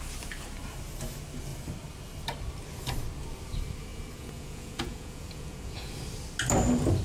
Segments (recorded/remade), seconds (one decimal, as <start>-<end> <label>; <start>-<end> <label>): 0.0-3.9 recorded; 3.9-5.9 remade; 5.9-7.0 recorded